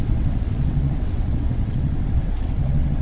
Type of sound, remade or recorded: remade